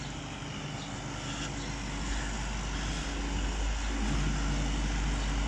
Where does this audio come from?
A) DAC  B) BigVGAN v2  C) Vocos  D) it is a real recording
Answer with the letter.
D